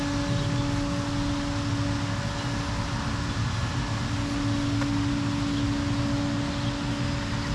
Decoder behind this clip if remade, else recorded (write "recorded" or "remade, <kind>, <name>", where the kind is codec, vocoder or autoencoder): recorded